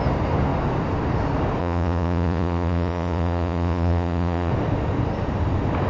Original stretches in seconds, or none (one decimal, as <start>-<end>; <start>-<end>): 0.0-1.6; 4.5-5.9